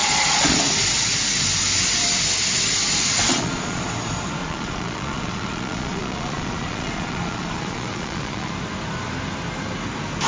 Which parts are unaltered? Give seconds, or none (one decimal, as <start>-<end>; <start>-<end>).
0.6-3.3; 3.8-4.4; 8.5-10.3